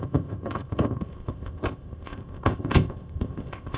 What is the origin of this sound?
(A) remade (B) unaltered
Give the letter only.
A